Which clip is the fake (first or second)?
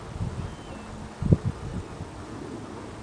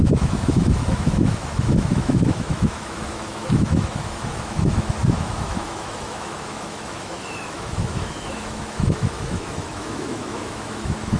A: second